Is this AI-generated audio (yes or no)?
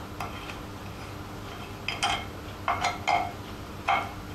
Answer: no